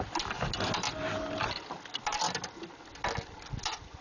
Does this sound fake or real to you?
real